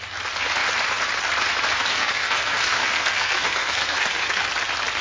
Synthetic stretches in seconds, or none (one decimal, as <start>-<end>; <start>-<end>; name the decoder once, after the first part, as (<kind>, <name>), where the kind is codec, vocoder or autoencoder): 1.9-4.5 (codec, SNAC)

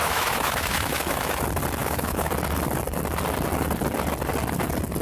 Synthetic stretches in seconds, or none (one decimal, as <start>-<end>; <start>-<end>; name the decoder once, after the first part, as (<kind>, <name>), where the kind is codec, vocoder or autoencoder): 0.0-1.4 (autoencoder, DAC-VAE); 1.8-2.3

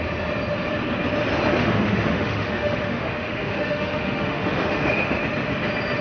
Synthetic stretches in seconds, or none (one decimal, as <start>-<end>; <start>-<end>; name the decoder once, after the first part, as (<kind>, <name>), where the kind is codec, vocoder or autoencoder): 1.6-5.2 (autoencoder, DAC-VAE)

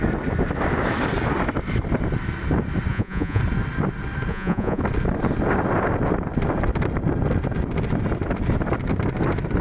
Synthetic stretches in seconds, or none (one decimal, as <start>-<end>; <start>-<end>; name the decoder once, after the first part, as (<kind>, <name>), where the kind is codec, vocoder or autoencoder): 2.9-3.4 (vocoder, Vocos); 4.3-4.8